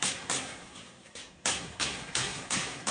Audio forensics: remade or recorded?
remade